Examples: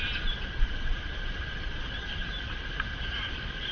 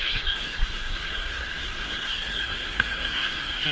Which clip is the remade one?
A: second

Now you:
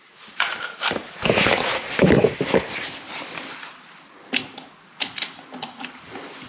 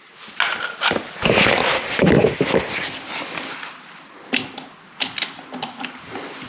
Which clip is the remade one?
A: first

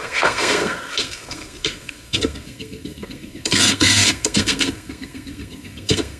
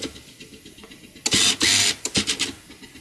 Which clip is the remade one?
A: first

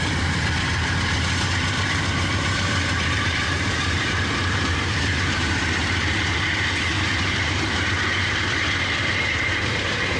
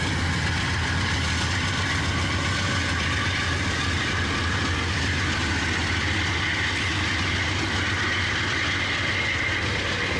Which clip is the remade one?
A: first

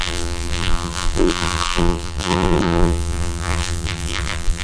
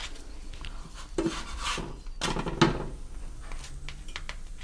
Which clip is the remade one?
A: first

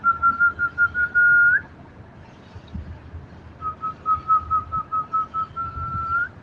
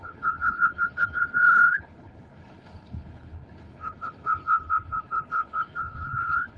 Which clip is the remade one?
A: second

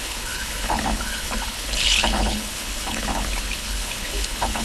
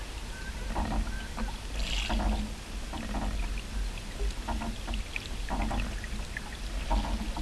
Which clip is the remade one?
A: first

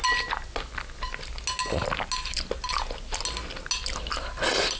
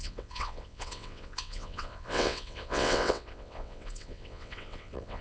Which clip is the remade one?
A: second